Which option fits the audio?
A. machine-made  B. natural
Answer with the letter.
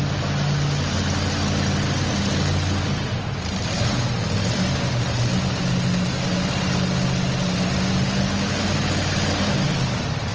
B